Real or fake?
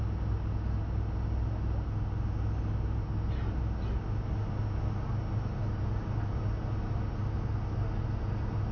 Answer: real